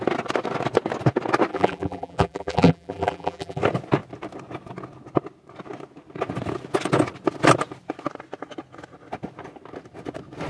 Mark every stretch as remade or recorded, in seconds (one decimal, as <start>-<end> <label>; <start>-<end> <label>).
0.0-1.5 recorded; 1.5-3.6 remade; 3.6-10.5 recorded